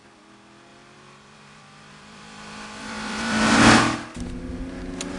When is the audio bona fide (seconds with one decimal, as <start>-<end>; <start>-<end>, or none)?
0.0-0.7; 3.8-5.2

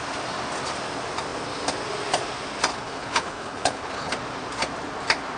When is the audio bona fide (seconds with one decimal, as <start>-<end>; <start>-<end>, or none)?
0.0-2.7; 4.1-5.4